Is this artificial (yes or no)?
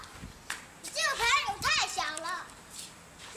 no